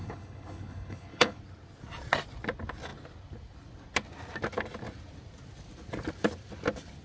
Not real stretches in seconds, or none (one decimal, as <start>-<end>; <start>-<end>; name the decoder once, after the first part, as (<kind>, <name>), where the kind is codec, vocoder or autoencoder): 0.0-1.4 (codec, HILCodec)